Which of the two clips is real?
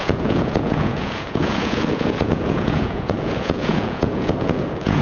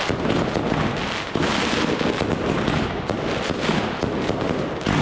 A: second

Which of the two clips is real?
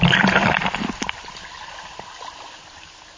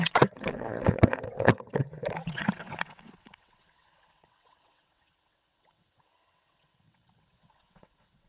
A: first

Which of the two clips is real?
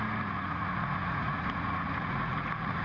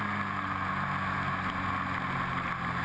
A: second